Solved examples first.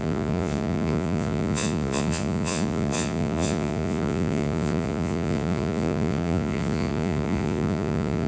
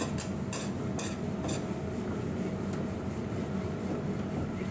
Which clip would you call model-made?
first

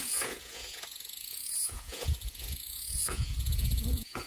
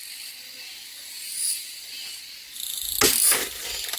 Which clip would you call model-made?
first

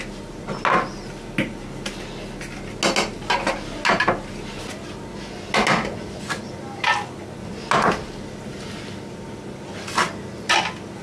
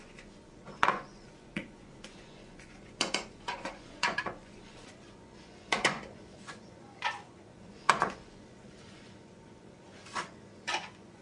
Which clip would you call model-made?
second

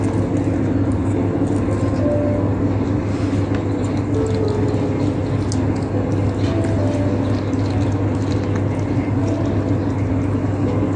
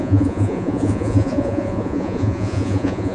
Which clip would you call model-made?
second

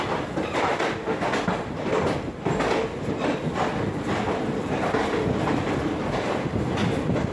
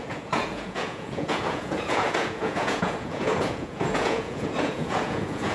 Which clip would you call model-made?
second